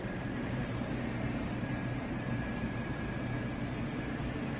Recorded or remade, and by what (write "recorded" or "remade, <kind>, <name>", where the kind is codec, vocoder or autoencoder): remade, vocoder, BigVGAN v2